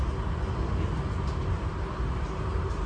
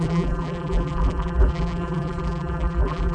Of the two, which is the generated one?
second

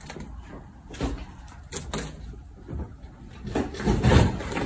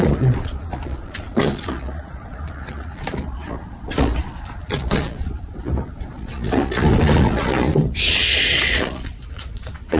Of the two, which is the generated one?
second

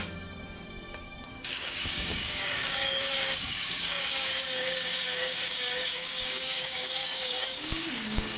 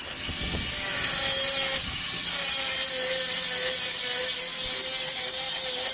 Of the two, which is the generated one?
first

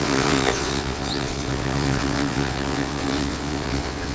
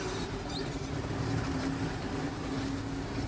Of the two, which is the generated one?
first